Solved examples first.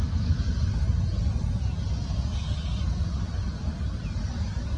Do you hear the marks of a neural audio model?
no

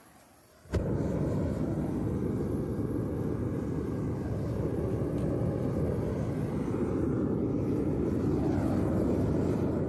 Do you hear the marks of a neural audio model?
no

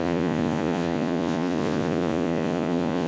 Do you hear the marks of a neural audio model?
yes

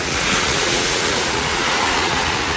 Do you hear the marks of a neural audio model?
yes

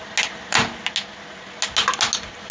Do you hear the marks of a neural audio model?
no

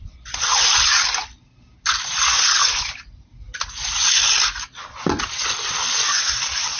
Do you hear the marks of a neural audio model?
no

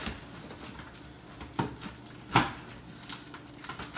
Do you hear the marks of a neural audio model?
no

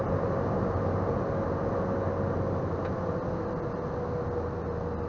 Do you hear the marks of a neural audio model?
no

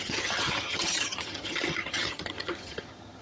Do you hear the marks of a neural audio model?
yes